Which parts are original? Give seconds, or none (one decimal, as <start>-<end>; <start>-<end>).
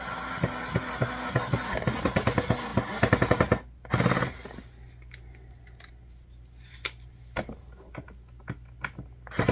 0.0-9.5